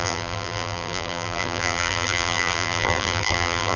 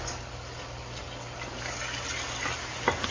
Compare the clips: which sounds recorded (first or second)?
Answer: second